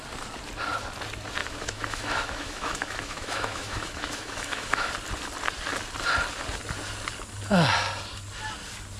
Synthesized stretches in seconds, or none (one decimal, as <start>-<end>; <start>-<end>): 1.4-4.9